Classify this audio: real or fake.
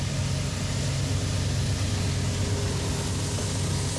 real